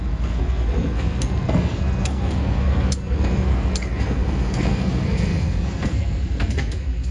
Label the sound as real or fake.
fake